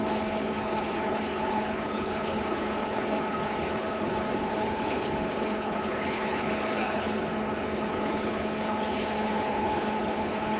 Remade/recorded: remade